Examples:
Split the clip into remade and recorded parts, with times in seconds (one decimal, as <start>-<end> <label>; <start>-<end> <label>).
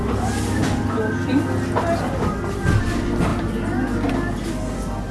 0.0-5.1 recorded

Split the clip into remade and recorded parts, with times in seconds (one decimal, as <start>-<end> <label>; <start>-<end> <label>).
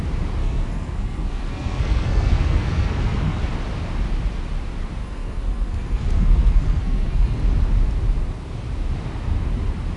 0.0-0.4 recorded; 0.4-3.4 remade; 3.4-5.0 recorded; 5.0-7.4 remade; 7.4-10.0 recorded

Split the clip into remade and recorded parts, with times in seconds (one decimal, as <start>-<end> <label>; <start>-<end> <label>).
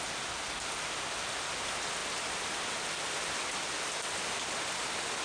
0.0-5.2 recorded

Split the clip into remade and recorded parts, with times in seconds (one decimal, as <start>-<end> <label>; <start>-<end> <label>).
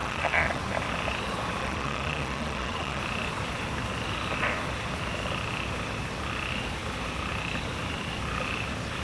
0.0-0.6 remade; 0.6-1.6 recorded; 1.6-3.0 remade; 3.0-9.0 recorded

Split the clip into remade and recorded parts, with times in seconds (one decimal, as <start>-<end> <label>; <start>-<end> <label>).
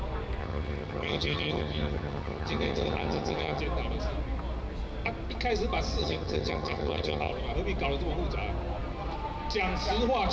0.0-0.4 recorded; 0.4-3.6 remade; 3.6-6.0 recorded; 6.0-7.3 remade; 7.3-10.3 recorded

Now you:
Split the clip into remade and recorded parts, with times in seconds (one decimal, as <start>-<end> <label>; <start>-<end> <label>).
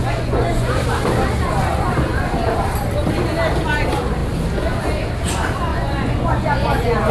0.0-0.8 remade; 0.8-5.7 recorded; 5.7-7.1 remade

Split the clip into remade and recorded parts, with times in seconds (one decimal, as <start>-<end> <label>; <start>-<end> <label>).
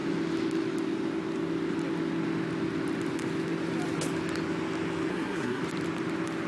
0.0-5.1 recorded; 5.1-5.6 remade; 5.6-6.5 recorded